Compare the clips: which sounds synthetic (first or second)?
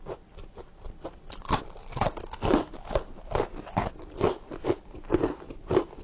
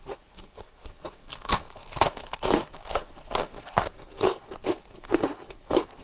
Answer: second